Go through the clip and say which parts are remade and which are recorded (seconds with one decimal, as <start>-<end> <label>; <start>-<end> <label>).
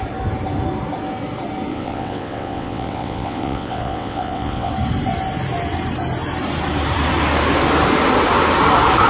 0.0-1.7 recorded; 1.7-4.7 remade; 4.7-9.1 recorded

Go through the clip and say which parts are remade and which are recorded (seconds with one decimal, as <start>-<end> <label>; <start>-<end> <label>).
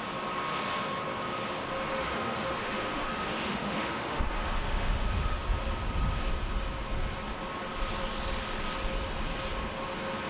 0.0-2.0 recorded; 2.0-5.4 remade; 5.4-10.3 recorded